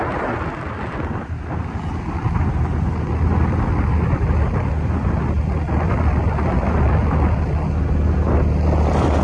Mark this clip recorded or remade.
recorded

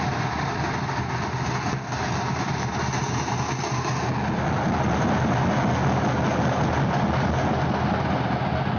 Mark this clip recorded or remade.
recorded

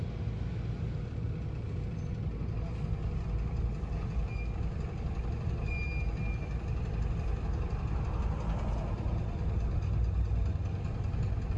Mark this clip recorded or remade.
recorded